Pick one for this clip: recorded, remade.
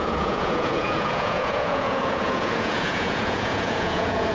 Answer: remade